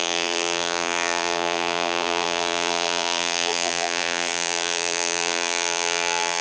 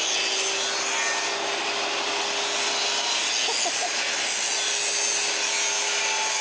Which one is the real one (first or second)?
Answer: second